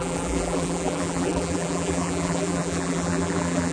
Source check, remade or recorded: remade